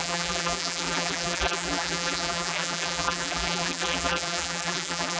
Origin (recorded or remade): remade